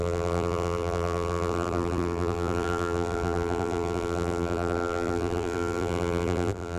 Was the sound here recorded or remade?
remade